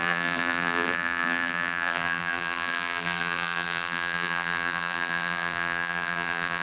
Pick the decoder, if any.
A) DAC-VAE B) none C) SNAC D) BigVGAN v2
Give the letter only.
D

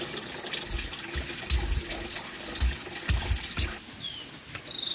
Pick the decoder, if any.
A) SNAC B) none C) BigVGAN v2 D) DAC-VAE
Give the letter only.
B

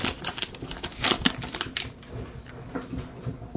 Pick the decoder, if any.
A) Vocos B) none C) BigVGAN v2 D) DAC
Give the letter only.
B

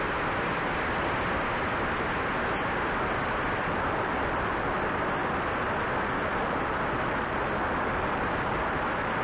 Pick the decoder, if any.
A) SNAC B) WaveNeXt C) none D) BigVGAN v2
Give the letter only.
C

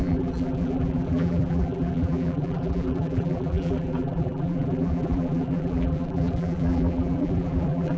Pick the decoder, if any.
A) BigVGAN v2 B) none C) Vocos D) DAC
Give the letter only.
A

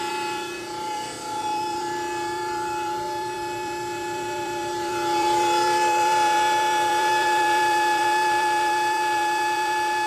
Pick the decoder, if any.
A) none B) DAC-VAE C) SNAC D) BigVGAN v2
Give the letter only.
D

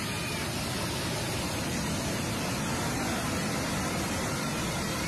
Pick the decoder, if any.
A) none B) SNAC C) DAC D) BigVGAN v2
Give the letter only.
D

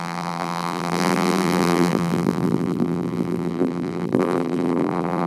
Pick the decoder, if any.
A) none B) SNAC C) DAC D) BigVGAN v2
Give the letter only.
D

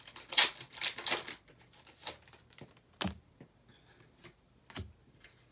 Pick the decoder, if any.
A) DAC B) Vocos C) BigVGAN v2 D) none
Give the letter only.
D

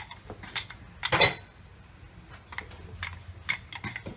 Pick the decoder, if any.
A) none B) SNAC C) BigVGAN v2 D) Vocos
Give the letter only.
A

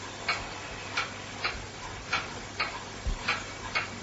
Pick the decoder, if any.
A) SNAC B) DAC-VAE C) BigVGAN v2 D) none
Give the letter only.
D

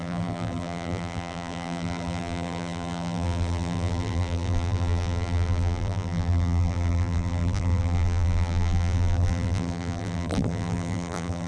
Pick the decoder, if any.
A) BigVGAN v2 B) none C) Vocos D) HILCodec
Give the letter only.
A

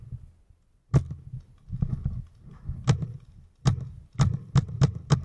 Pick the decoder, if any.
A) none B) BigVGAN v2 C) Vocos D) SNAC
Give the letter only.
A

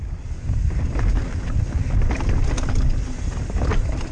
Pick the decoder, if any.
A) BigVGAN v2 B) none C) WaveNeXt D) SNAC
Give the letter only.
B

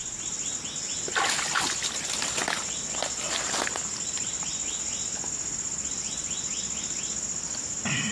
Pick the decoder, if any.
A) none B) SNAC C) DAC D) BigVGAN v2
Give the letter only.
A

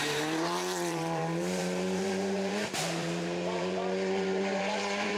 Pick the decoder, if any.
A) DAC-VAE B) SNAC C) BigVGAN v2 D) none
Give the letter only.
C